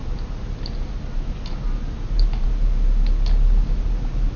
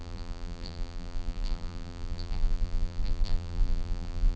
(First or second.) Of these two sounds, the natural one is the first